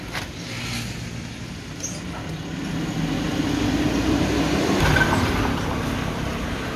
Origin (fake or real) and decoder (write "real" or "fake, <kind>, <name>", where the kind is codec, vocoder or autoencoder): real